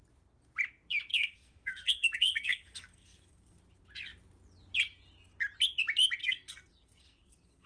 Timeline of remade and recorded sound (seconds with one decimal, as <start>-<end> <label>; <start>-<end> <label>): 0.0-1.1 recorded; 1.1-3.6 remade; 3.6-6.2 recorded; 6.2-7.7 remade